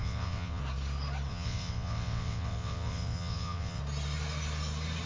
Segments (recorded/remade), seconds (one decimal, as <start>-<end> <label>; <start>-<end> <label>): 0.0-0.6 remade; 0.6-1.3 recorded; 1.3-3.8 remade; 3.8-5.1 recorded